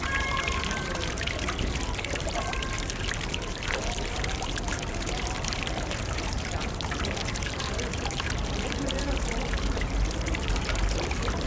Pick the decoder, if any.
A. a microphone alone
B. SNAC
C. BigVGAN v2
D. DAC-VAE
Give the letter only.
C